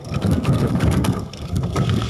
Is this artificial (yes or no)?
yes